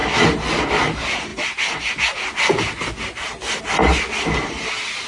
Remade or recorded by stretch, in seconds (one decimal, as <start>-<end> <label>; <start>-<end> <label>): 0.0-5.1 recorded